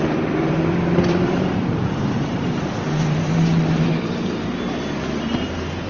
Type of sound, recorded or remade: remade